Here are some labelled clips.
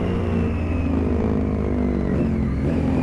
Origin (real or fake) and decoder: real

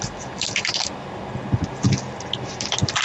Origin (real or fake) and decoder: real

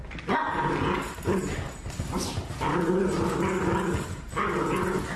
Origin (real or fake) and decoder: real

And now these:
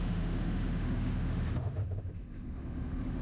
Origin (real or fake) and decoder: fake, autoencoder, DAC-VAE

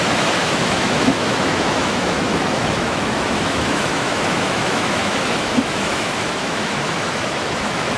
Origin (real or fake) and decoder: fake, autoencoder, DAC-VAE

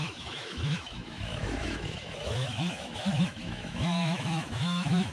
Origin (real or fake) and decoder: fake, autoencoder, DAC-VAE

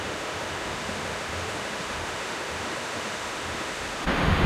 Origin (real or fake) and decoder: fake, autoencoder, DAC-VAE